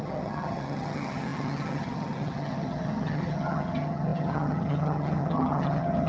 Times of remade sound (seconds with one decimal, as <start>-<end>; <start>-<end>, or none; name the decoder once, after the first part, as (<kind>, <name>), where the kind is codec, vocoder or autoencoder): 0.0-6.1 (vocoder, HiFi-GAN)